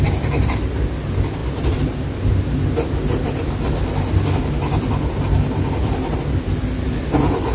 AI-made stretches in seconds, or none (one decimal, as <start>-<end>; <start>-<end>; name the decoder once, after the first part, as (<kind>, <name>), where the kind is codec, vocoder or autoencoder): none